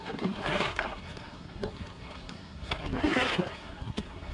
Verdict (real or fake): fake